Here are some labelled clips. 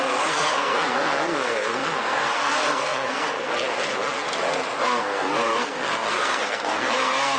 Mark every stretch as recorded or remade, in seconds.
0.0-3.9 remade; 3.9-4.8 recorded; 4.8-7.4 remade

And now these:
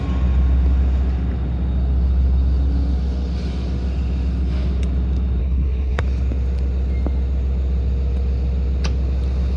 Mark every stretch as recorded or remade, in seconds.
0.0-5.4 recorded; 5.4-6.0 remade; 6.0-9.6 recorded

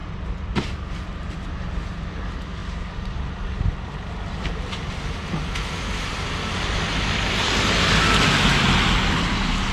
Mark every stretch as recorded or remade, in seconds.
0.0-9.7 recorded

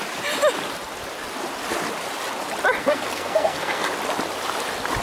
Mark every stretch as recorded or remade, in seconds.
0.0-2.8 recorded; 2.8-3.9 remade; 3.9-5.0 recorded

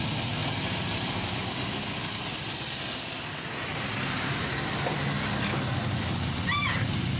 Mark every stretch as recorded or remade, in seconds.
0.0-7.2 recorded